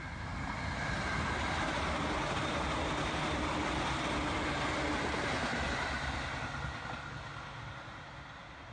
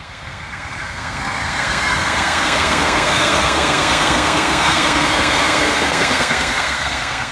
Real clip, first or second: first